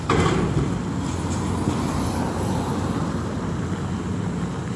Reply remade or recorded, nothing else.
recorded